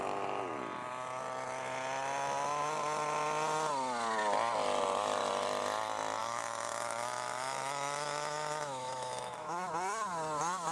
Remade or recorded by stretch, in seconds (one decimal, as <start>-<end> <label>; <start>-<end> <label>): 0.0-6.2 recorded; 6.2-9.7 remade; 9.7-10.7 recorded